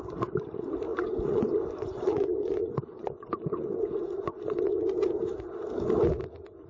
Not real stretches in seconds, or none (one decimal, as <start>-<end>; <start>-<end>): 0.9-4.9

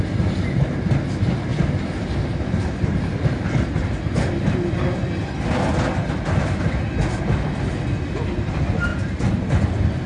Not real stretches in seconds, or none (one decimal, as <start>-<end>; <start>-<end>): none

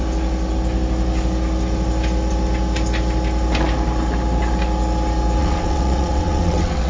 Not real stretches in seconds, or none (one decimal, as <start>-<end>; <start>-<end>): 5.4-6.9